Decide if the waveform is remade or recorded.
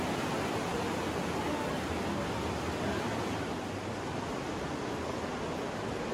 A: recorded